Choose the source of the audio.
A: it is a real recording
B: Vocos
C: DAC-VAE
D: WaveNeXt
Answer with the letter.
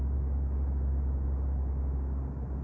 A